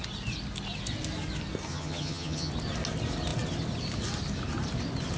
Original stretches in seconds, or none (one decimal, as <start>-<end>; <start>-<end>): 0.0-1.7; 2.5-5.2